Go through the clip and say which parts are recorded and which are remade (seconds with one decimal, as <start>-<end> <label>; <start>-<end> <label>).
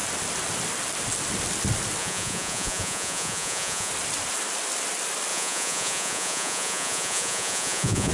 0.0-2.0 recorded; 2.0-3.9 remade; 3.9-5.3 recorded; 5.3-8.1 remade